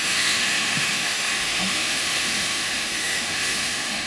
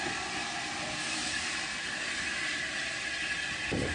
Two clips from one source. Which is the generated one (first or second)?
first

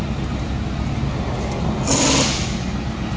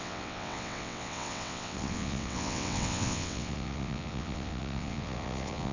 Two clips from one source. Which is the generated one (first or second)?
second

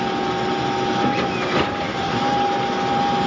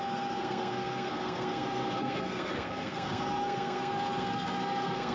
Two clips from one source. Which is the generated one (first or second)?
second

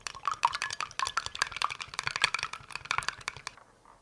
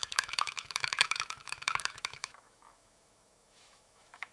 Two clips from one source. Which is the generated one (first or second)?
second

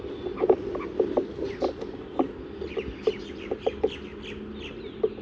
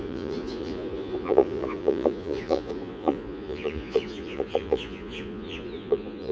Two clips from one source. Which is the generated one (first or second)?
second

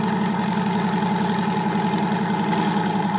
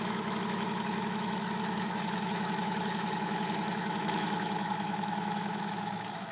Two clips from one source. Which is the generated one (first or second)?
second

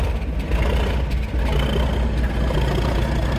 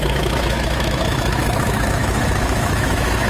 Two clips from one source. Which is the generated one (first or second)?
second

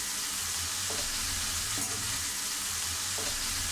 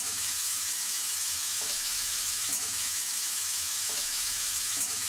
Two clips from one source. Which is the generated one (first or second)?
second